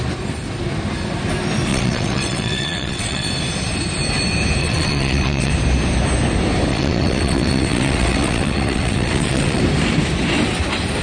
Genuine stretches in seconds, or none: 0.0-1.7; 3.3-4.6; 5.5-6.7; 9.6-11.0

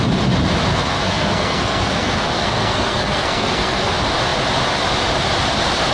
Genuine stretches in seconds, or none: 0.0-0.7; 3.9-5.9

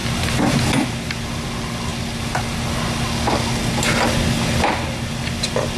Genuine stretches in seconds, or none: 0.0-5.8

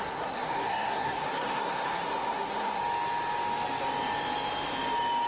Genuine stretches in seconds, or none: 2.8-5.3